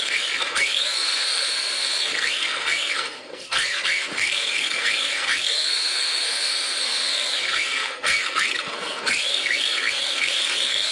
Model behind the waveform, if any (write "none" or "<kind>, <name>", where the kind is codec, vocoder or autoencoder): codec, SNAC